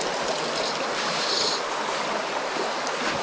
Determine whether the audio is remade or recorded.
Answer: recorded